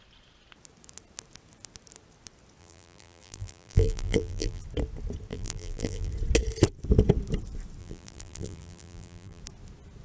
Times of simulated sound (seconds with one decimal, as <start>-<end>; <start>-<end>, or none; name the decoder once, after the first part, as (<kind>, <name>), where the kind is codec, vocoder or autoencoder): 2.6-4.6 (vocoder, BigVGAN v2); 5.3-6.1; 7.8-9.4